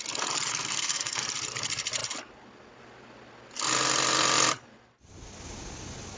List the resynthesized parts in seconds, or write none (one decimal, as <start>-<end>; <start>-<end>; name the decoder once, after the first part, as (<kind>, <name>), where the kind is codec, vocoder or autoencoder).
0.5-1.2 (codec, SNAC)